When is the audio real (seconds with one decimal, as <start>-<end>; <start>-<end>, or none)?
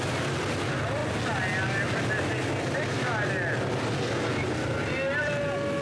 0.0-5.8